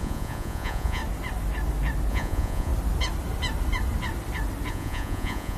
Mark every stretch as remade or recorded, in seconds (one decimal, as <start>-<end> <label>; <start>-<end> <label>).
0.0-1.0 remade; 1.0-2.1 recorded; 2.1-2.7 remade; 2.7-4.7 recorded; 4.7-5.6 remade